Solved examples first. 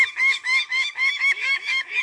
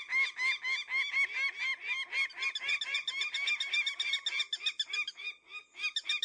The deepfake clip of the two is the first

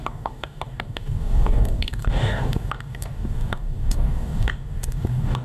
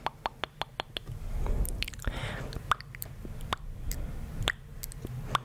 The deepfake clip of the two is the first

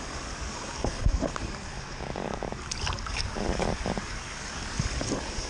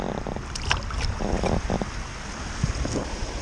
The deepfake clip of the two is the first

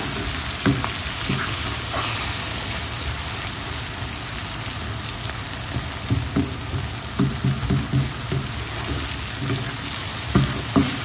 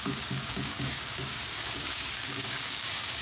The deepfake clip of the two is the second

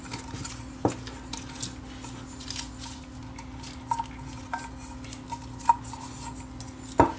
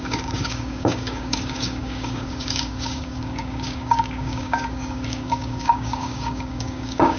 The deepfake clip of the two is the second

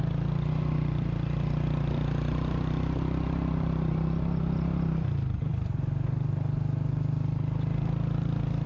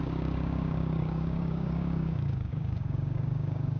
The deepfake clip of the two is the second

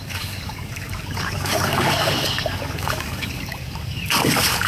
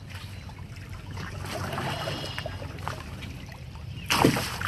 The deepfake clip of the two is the first